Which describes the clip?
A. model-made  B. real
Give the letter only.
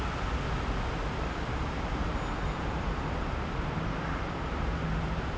B